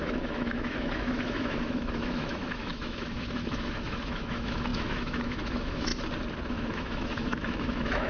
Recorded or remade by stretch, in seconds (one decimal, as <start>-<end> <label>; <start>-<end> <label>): 0.0-5.9 remade; 5.9-6.5 recorded; 6.5-8.1 remade